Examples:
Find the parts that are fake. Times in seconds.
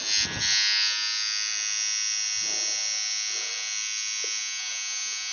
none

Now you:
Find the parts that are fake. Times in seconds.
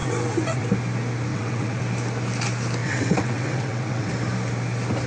0.0-0.7; 1.3-1.8; 2.8-4.1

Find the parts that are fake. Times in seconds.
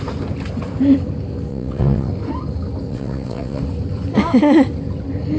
1.5-2.1; 2.9-3.6